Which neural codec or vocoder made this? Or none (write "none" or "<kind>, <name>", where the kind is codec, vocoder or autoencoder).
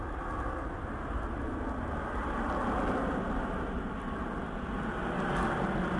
none